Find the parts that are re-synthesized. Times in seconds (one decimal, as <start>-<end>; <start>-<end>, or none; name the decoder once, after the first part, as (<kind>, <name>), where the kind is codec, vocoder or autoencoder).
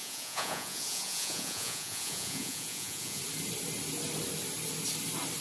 0.0-3.2 (vocoder, Vocos)